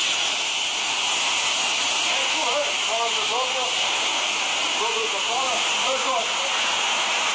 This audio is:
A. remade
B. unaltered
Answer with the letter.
B